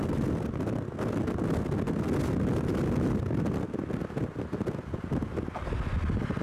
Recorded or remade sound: recorded